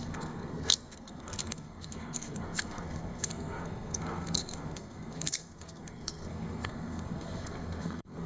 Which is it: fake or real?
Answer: fake